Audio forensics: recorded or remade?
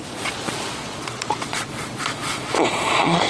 remade